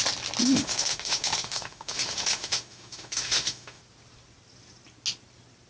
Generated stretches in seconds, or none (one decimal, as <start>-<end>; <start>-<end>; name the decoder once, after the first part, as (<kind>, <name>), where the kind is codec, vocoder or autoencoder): 0.4-3.8 (autoencoder, DAC-VAE)